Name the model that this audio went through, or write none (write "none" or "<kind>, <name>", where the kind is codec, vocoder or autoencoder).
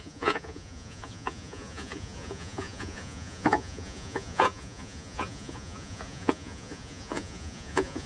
vocoder, Vocos